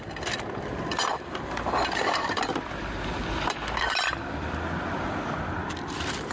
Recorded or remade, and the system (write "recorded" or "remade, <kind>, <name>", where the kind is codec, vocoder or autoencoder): remade, vocoder, BigVGAN v2